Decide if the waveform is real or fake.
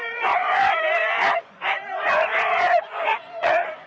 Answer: fake